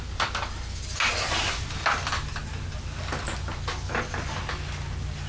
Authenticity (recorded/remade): recorded